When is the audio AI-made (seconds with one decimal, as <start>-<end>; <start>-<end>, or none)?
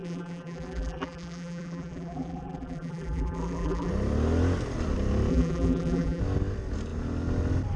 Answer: 0.0-3.9; 5.3-6.2